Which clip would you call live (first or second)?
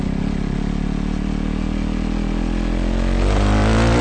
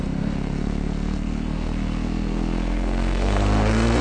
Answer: first